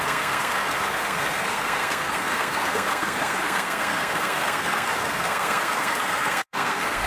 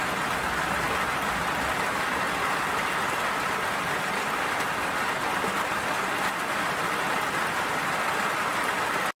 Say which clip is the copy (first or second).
first